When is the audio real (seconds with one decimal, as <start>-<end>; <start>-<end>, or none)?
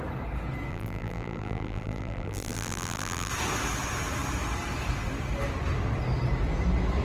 0.0-0.7; 3.3-7.0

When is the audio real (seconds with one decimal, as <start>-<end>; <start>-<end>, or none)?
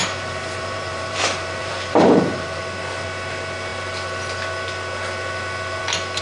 2.6-6.2